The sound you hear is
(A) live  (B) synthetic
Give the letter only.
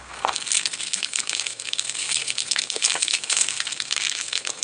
B